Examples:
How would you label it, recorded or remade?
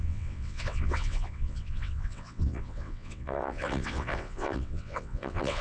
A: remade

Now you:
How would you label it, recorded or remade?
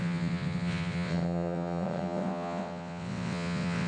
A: remade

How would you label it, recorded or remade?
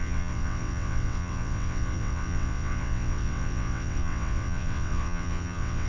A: remade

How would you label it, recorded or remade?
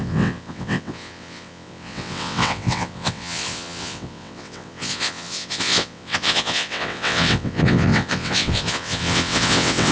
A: remade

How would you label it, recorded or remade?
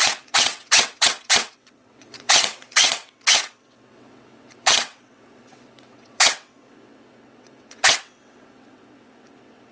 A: remade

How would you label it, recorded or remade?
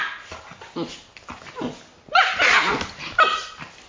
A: recorded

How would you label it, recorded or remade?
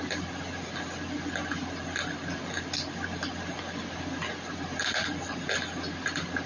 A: recorded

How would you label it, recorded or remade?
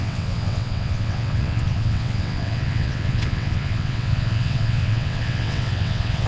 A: remade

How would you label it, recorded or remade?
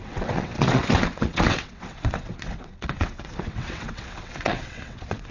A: remade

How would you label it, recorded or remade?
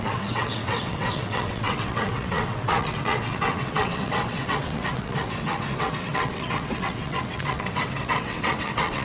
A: remade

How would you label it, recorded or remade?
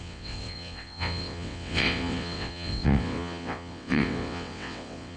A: remade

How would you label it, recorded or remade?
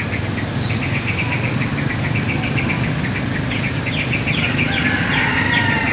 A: recorded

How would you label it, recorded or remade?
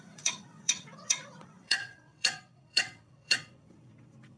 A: remade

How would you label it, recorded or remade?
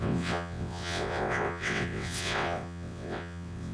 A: remade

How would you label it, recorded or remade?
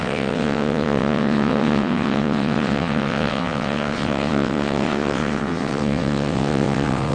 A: remade